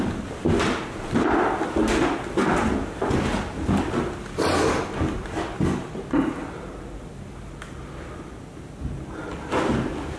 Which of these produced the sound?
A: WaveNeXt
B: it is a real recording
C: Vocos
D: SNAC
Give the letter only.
B